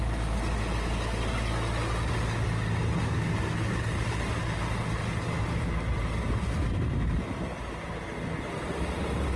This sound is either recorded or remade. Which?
recorded